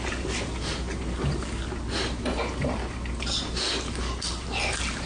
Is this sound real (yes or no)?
yes